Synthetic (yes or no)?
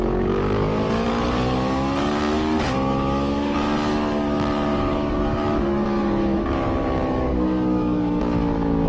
yes